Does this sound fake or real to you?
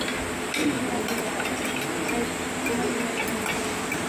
real